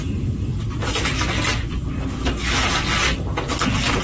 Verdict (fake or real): real